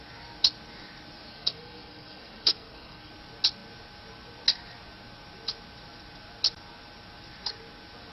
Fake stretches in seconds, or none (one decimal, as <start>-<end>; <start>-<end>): 1.3-3.1